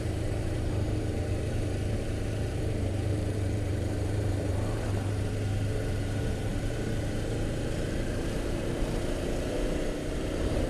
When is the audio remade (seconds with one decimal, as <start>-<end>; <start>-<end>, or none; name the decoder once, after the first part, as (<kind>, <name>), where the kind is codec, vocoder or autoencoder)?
0.0-10.7 (vocoder, BigVGAN v2)

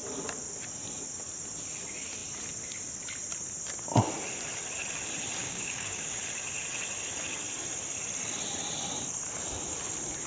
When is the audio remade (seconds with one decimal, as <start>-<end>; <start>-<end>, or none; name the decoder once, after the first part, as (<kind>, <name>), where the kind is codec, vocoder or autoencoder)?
5.4-6.2 (codec, DAC)